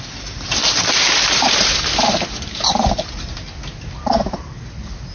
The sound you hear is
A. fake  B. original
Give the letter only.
B